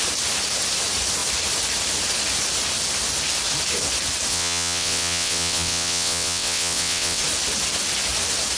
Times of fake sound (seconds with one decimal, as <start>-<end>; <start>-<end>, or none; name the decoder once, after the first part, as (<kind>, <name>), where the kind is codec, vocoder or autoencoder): 4.3-7.2 (vocoder, WaveNeXt)